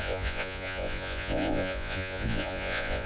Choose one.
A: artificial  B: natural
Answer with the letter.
A